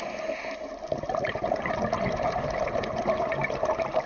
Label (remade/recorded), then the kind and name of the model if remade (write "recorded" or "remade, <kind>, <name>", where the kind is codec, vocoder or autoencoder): recorded